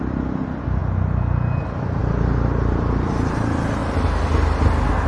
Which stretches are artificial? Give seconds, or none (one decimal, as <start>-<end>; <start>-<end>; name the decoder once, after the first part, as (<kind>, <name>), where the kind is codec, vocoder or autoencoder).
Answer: none